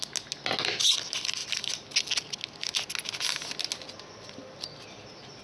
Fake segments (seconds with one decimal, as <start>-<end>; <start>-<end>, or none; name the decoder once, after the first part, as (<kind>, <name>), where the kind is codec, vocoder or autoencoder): none